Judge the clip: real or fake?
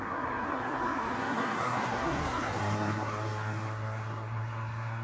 fake